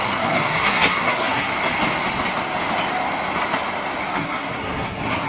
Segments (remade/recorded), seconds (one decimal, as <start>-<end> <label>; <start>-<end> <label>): 0.0-1.5 remade; 1.5-4.1 recorded; 4.1-5.3 remade